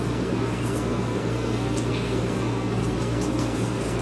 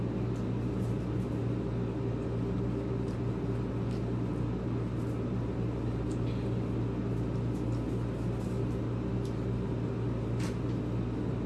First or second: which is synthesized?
first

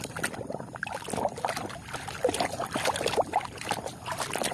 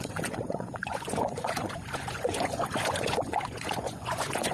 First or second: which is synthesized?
second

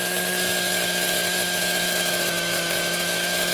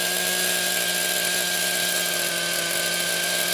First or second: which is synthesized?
first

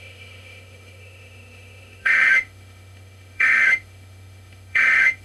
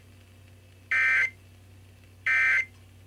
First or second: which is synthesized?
first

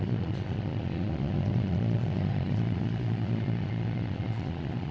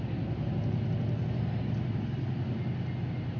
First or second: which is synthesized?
first